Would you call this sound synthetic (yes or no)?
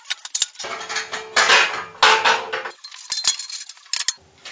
no